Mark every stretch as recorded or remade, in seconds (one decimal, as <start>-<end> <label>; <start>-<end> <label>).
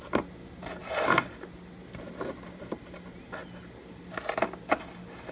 0.0-5.3 recorded